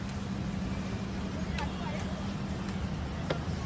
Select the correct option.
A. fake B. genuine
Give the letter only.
B